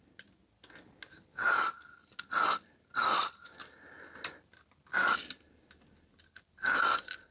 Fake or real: real